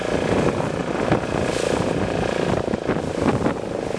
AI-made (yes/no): yes